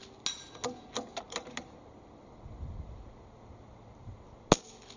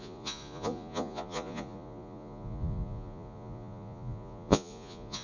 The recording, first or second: first